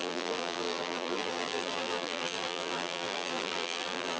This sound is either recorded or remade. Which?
remade